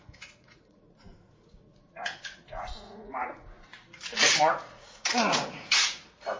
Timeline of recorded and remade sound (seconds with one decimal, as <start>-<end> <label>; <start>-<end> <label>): 0.0-3.7 remade; 3.7-4.4 recorded; 4.4-6.4 remade